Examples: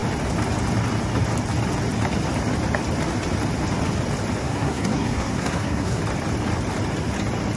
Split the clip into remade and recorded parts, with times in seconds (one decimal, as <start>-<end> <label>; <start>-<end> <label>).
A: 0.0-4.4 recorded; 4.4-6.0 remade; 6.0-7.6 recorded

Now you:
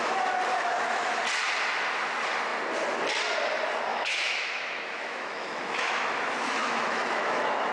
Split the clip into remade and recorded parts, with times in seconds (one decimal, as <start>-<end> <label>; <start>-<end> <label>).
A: 0.0-0.5 recorded; 0.5-1.2 remade; 1.2-3.9 recorded; 3.9-7.7 remade

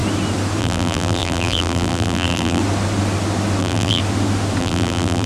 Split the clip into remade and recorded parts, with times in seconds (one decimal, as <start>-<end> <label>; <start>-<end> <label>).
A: 0.0-0.6 recorded; 0.6-2.6 remade; 2.6-3.6 recorded; 3.6-4.0 remade; 4.0-4.6 recorded; 4.6-5.3 remade

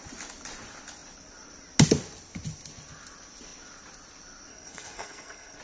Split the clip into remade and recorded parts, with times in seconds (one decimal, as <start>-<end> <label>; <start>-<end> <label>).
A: 0.0-4.5 recorded; 4.5-5.6 remade